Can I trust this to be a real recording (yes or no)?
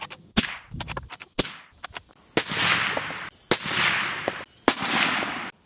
yes